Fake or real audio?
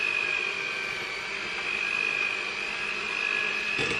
real